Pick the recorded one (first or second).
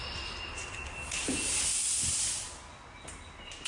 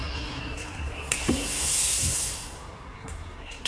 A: first